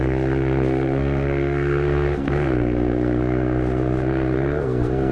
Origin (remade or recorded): remade